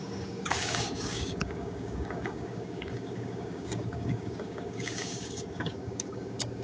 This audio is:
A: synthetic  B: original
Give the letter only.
A